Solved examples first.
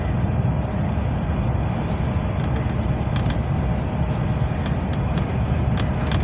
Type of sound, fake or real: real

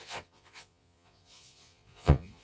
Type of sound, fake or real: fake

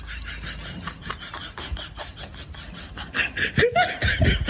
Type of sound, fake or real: real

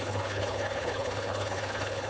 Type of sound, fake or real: fake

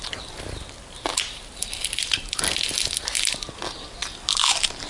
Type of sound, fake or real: real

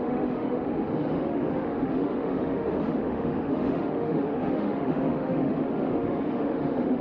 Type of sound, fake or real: fake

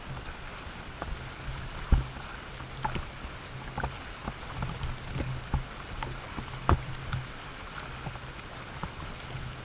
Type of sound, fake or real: real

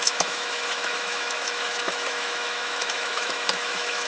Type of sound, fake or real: fake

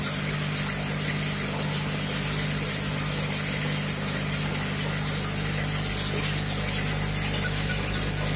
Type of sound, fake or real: real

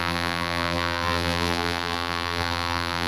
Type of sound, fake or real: fake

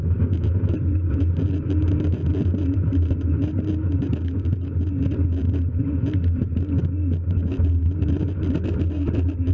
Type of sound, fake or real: real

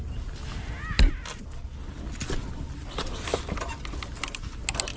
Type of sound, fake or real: real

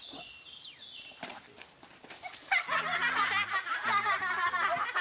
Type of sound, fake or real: real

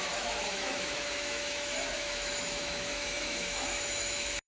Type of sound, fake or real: fake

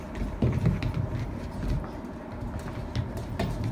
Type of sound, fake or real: real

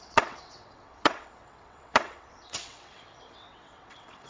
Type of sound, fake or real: fake